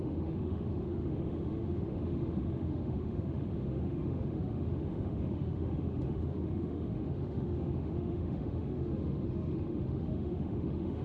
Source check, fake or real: fake